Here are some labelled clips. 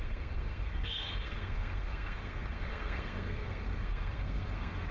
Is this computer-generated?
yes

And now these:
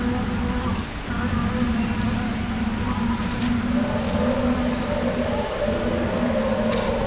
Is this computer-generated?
no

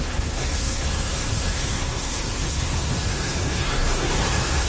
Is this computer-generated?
yes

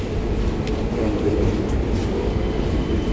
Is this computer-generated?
no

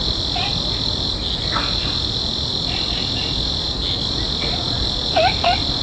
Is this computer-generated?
no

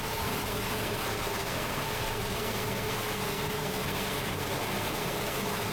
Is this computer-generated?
yes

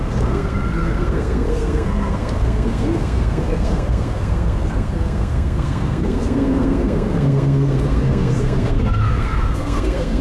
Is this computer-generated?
yes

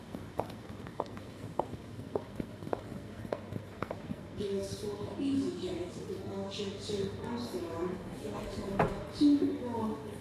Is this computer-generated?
yes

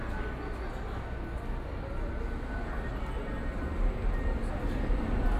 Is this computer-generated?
no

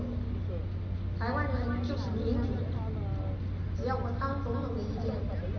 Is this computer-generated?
no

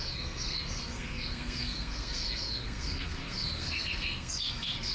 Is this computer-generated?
yes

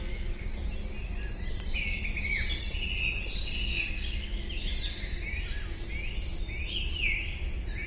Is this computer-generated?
no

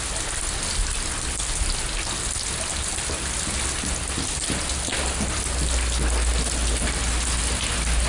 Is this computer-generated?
no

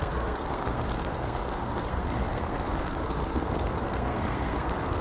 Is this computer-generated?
yes